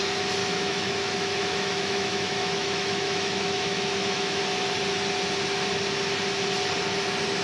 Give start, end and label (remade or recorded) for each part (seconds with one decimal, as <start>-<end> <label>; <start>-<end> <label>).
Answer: 0.0-0.4 recorded; 0.4-4.4 remade; 4.4-7.4 recorded